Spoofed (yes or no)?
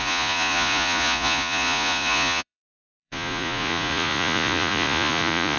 yes